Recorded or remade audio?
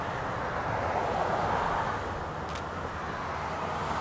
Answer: recorded